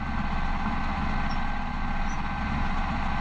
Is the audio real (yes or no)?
yes